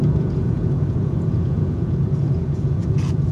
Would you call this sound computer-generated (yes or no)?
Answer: yes